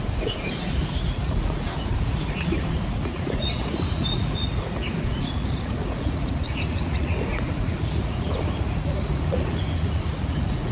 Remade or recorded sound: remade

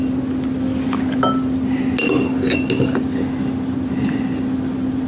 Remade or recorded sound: recorded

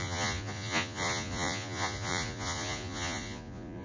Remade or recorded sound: remade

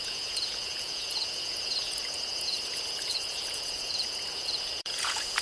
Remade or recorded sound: remade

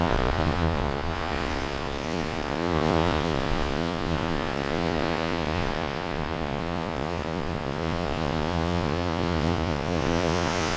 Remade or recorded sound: remade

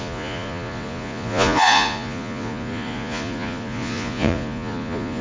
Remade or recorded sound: remade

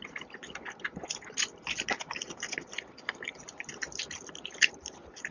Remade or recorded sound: recorded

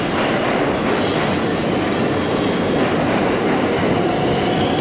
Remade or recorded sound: recorded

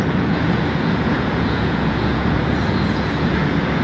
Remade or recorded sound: remade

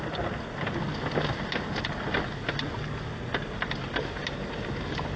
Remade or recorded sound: recorded